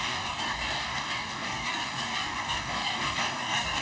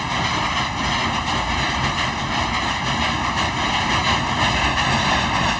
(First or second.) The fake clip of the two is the first